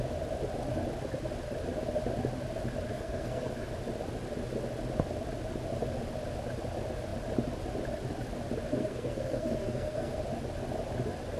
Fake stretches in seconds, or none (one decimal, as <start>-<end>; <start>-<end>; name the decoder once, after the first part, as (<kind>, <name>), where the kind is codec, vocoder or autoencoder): 2.9-3.7 (codec, SNAC); 8.7-10.2